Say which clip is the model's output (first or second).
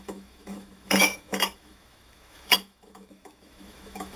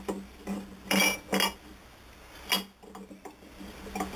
first